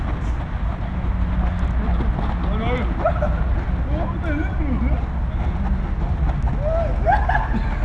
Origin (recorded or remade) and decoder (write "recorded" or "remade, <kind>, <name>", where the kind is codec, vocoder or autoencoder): recorded